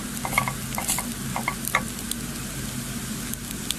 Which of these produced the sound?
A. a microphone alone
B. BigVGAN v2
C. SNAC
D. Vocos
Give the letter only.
A